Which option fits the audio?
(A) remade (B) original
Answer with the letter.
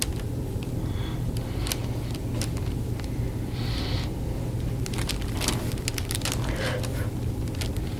B